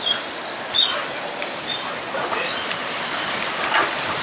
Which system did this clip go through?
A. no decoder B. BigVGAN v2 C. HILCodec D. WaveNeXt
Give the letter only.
A